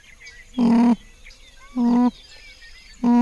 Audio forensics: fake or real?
real